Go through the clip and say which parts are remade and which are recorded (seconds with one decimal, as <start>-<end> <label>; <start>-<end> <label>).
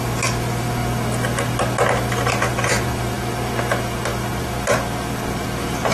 0.0-5.9 recorded